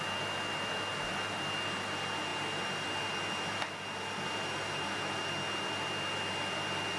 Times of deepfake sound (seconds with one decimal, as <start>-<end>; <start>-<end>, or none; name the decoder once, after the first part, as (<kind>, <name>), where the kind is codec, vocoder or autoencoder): none